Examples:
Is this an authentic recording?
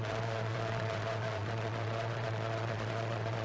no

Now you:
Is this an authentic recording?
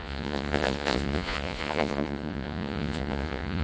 no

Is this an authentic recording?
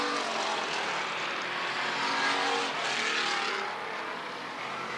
yes